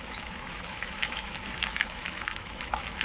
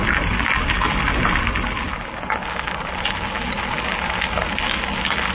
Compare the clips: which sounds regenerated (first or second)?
first